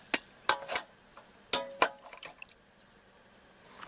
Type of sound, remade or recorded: recorded